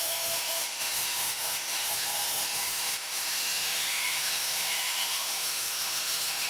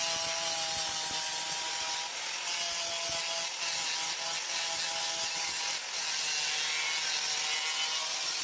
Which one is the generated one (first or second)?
first